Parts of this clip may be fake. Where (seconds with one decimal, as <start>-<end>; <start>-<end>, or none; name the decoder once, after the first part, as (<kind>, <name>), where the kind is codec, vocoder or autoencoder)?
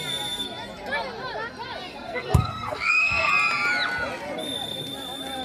1.9-3.3 (codec, SNAC)